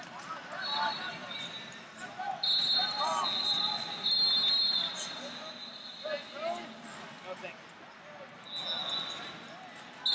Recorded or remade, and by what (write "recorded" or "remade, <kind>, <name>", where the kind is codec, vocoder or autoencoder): recorded